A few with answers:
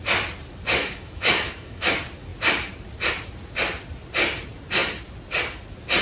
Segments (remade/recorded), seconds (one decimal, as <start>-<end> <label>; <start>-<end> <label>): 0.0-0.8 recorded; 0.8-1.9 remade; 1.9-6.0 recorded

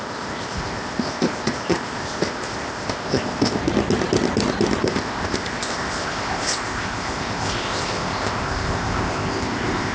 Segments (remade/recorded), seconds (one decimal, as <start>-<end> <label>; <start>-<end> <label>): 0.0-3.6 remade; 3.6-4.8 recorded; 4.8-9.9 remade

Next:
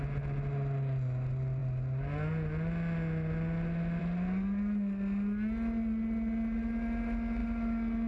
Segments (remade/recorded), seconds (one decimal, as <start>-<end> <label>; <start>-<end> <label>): 0.0-8.1 recorded